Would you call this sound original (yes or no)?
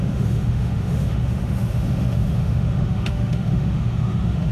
no